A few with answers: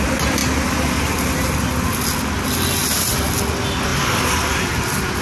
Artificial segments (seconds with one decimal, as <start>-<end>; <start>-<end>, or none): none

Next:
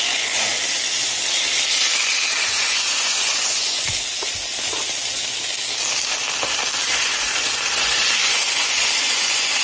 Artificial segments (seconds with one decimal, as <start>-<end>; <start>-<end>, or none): 0.0-0.5; 2.4-3.8; 6.9-9.6

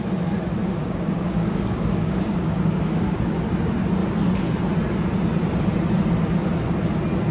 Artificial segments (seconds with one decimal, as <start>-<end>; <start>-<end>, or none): 0.6-3.2

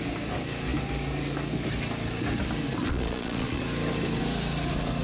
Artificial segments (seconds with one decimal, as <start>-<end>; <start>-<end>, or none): 2.8-3.6

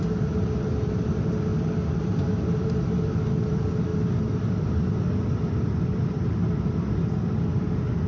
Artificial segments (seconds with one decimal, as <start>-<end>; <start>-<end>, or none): none

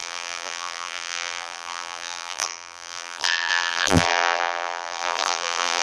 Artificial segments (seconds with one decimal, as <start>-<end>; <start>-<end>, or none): 0.0-5.8